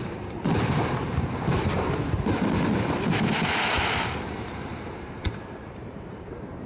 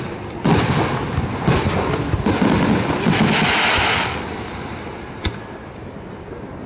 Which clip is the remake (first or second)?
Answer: first